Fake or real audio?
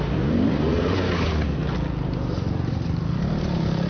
real